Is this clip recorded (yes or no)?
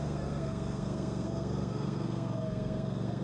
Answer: no